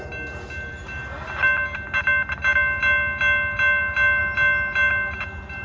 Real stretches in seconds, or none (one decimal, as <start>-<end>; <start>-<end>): 0.0-5.6